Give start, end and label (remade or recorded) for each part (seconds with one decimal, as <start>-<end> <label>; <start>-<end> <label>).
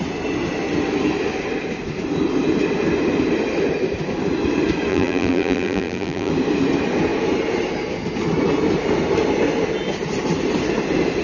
0.0-4.9 recorded; 4.9-6.3 remade; 6.3-11.2 recorded